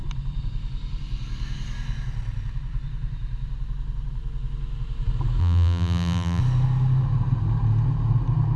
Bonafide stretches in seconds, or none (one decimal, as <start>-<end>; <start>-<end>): 0.0-5.4; 6.4-8.6